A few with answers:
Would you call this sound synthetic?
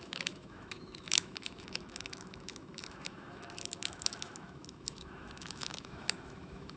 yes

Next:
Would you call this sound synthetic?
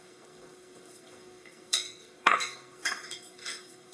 yes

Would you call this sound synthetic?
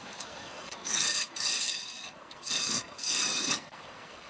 yes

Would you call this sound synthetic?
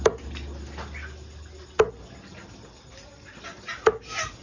no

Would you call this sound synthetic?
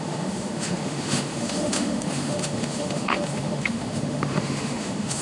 yes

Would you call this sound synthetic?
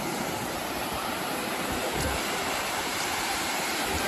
yes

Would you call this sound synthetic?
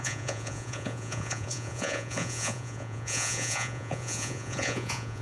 yes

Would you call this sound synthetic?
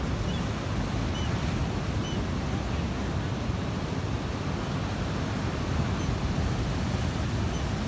no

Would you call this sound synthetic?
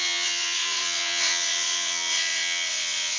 yes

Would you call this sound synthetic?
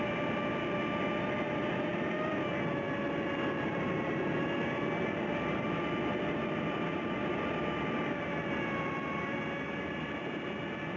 no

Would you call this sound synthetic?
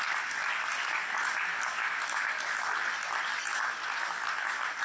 no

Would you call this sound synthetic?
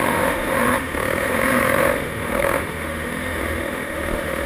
yes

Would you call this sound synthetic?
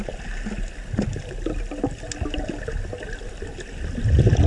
no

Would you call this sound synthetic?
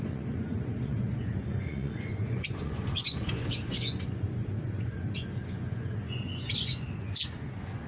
yes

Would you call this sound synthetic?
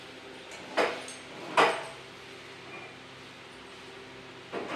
no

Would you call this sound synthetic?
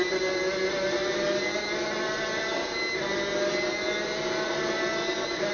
no